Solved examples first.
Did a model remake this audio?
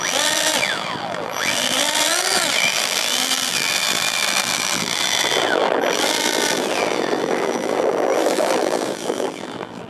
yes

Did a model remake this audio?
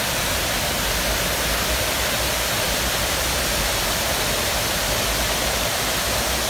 no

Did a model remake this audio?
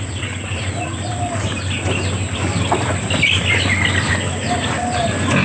no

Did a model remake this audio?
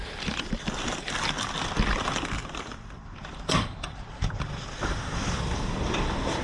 yes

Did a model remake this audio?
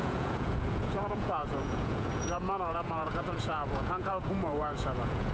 yes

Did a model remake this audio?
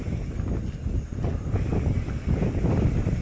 no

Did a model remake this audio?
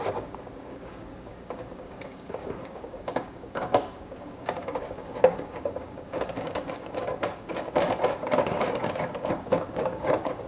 yes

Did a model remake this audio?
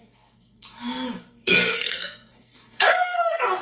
yes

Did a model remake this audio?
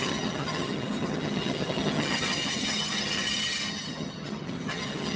yes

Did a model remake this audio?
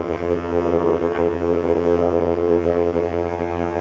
yes